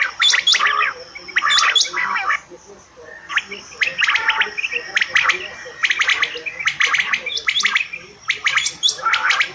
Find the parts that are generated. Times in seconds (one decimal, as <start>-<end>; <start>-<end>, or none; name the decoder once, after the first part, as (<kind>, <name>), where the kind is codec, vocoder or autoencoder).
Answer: none